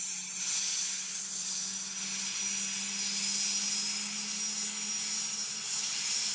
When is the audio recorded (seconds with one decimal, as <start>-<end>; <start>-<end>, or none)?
0.0-5.4